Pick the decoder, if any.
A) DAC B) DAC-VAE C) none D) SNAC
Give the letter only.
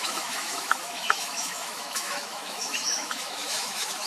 B